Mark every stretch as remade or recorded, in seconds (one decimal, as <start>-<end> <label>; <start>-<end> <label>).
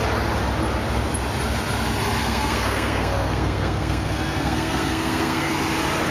0.0-2.2 recorded; 2.2-5.5 remade; 5.5-6.1 recorded